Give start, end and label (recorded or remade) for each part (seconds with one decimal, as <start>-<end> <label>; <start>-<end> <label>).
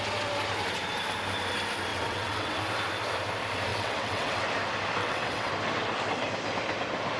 0.0-1.9 recorded; 1.9-2.6 remade; 2.6-3.7 recorded; 3.7-4.4 remade; 4.4-5.0 recorded; 5.0-5.5 remade; 5.5-7.2 recorded